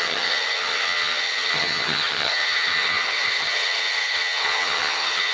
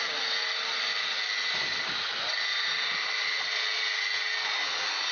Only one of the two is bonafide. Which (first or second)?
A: second